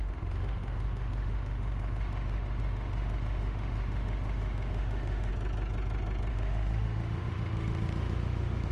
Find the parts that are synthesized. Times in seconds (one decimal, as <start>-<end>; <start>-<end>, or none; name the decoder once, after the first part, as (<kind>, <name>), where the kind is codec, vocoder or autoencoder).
0.0-5.3 (autoencoder, DAC-VAE); 6.3-8.7